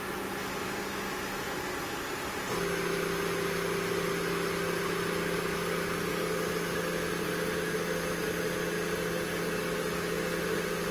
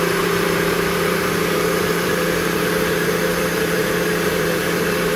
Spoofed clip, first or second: second